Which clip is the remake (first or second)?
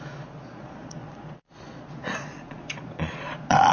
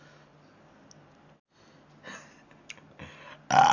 first